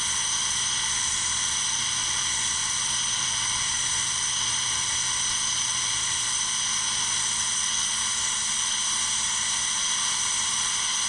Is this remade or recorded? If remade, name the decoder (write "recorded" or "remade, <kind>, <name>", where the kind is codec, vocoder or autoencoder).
recorded